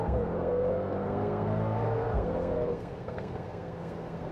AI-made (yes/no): yes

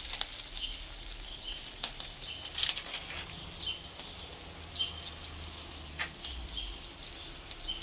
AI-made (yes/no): no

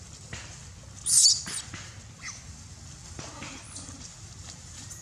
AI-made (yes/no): no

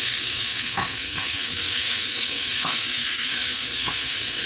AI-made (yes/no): yes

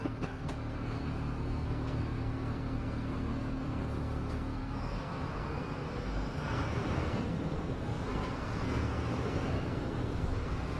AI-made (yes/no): yes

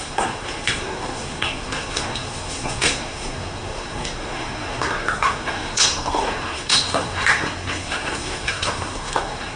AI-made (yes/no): yes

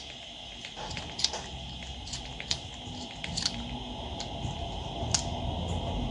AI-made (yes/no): no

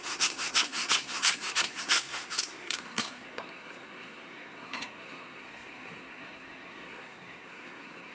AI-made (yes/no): yes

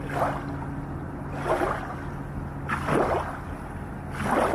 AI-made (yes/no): no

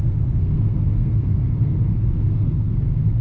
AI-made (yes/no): yes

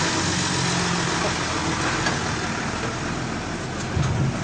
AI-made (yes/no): no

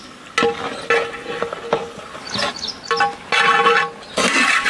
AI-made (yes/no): no